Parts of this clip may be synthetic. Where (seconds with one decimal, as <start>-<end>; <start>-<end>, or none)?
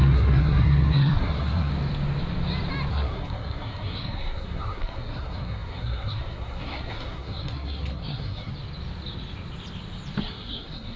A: 0.0-1.7; 2.9-8.5; 10.2-11.0